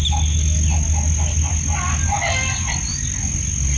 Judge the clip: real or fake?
real